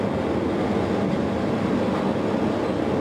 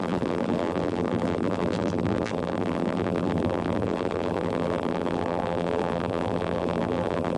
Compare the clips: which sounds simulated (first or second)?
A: second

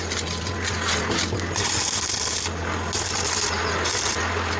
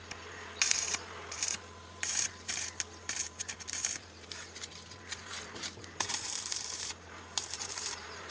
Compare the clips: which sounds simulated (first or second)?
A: second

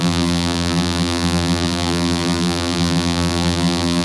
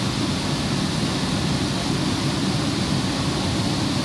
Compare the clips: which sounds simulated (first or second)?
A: first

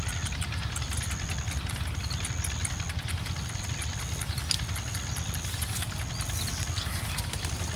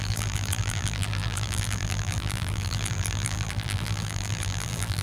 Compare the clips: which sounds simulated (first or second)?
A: second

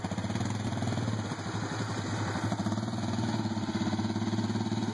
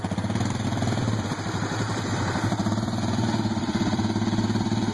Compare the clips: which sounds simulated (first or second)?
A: second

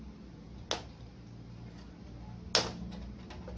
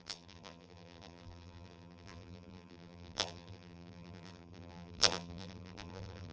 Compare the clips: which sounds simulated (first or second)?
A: second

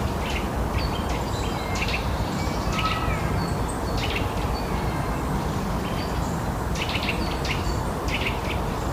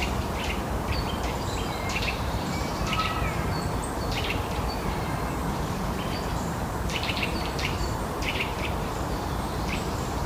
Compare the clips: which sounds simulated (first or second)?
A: second